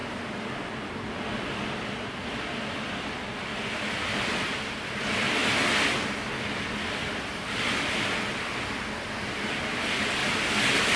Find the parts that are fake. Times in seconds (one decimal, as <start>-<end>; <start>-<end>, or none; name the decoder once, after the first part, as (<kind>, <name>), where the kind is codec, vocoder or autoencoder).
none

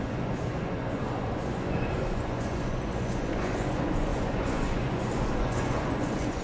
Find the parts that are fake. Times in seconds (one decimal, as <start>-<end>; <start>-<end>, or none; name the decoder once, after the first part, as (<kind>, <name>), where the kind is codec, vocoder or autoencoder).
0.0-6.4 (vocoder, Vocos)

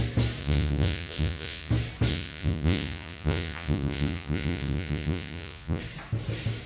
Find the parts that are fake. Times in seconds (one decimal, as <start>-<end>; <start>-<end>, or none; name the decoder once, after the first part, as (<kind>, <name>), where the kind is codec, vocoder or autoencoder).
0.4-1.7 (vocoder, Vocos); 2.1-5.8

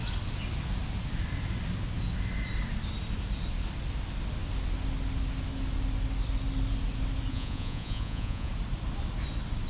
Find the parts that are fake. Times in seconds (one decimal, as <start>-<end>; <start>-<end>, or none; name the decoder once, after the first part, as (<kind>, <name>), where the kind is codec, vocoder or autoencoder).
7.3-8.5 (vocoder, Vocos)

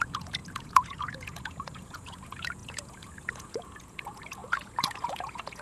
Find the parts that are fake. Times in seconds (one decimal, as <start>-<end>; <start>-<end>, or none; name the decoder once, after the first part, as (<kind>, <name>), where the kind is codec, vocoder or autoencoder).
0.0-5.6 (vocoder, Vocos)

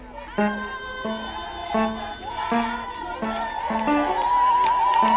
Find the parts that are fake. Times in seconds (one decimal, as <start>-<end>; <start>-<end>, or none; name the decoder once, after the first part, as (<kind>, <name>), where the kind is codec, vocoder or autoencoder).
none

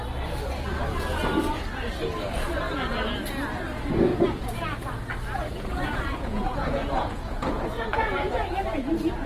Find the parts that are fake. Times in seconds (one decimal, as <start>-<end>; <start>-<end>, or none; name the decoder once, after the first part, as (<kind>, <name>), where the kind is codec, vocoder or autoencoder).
4.1-4.9 (vocoder, Vocos); 5.4-8.4

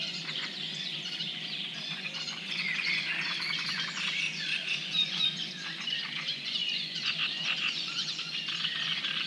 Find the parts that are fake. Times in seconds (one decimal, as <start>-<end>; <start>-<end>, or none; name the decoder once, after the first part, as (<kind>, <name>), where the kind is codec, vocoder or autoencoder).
0.0-9.3 (vocoder, Vocos)